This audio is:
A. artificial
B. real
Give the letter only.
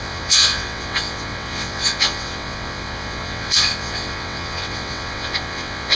A